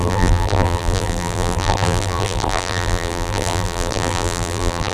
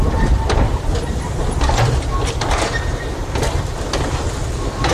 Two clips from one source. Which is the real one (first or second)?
second